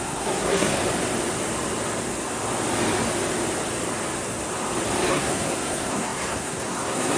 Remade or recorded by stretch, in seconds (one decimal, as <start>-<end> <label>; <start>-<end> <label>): 0.0-0.8 remade; 0.8-5.1 recorded; 5.1-7.2 remade